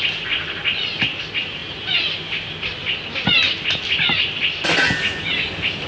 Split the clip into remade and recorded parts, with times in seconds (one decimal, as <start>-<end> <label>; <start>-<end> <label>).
0.0-5.9 recorded